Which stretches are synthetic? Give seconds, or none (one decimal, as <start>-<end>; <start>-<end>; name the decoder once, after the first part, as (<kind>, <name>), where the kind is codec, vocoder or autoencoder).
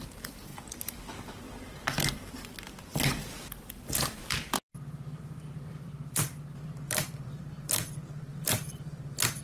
0.0-0.5 (vocoder, BigVGAN v2); 2.1-4.2; 5.2-9.4